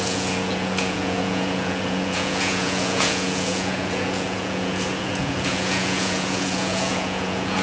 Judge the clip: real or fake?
fake